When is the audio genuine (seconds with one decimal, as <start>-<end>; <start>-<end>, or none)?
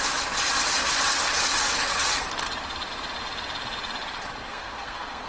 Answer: 0.0-4.5